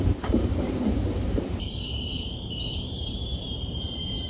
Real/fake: fake